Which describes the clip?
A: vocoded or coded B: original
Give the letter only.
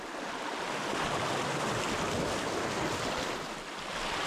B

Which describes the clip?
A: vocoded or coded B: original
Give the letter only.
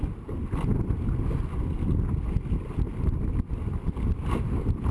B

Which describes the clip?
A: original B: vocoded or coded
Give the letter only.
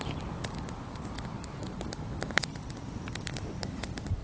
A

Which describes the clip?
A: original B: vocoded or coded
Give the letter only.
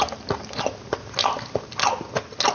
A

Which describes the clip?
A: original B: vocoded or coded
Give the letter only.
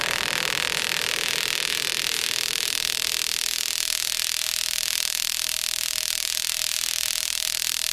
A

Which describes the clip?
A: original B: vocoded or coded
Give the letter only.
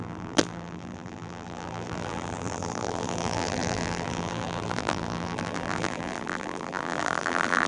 B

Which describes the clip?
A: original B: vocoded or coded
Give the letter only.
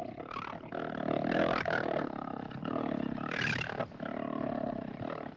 A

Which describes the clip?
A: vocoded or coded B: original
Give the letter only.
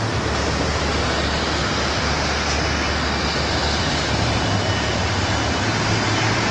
B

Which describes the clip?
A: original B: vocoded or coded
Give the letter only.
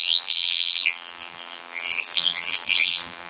B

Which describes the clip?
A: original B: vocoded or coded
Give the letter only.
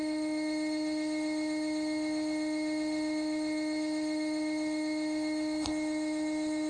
B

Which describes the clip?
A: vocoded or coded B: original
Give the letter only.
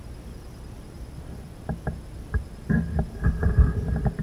B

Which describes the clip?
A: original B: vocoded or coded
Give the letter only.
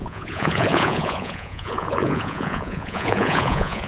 B